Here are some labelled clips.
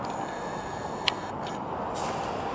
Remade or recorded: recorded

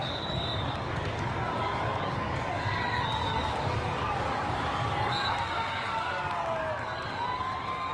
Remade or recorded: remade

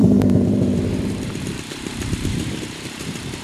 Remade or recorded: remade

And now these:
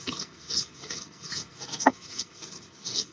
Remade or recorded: remade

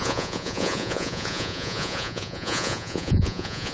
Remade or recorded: remade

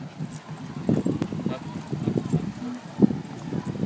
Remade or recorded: recorded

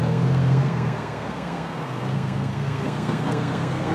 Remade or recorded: remade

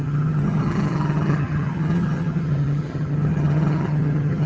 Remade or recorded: remade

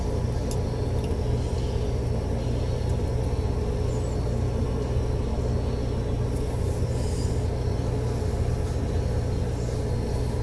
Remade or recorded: recorded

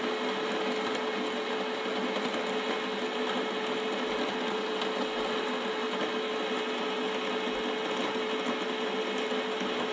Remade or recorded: recorded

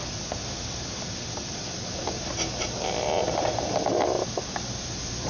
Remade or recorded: recorded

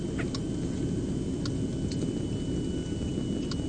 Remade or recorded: recorded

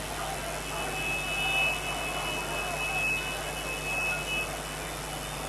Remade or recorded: recorded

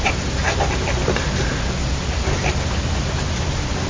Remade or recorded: recorded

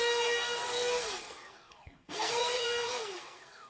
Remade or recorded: remade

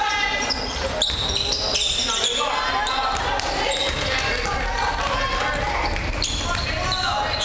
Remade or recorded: recorded